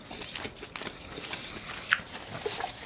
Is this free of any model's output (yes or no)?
yes